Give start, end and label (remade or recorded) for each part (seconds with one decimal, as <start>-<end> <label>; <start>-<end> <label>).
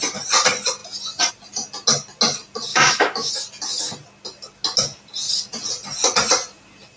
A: 0.0-2.7 recorded; 2.7-3.3 remade; 3.3-7.0 recorded